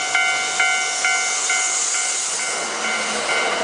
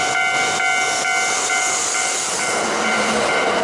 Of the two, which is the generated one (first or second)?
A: second